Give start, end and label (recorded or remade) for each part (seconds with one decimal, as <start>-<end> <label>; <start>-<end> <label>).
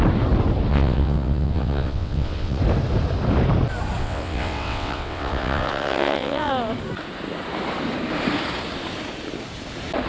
0.0-0.7 recorded; 0.7-2.6 remade; 2.6-4.0 recorded; 4.0-6.5 remade; 6.5-10.1 recorded